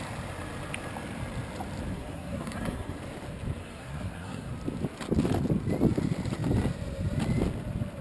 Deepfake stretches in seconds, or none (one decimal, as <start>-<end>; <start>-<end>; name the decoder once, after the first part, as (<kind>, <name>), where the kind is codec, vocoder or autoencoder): 1.9-3.0 (codec, SNAC); 3.6-4.5